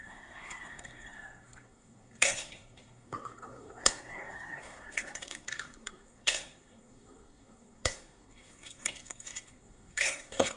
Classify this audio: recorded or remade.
remade